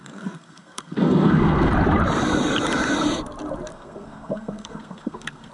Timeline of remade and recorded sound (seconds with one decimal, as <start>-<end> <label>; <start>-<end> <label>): 0.0-1.7 remade; 1.7-3.7 recorded; 3.7-5.5 remade